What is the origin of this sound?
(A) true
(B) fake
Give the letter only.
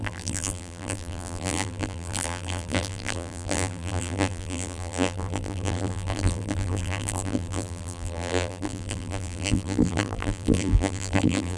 B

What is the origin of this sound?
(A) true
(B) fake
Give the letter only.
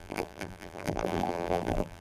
B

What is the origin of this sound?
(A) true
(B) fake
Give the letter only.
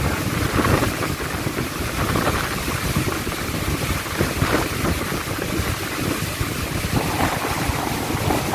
A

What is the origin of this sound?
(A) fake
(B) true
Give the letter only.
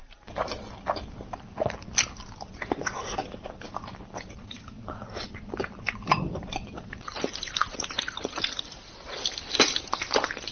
A